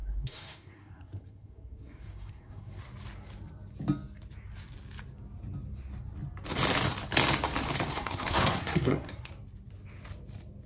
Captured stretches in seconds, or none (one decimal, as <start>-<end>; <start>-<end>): 2.8-7.9; 9.3-10.7